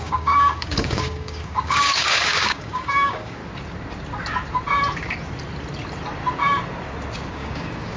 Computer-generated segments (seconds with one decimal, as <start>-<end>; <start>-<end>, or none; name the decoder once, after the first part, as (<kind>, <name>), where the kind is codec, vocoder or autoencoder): 0.0-3.4 (codec, DAC); 7.3-8.0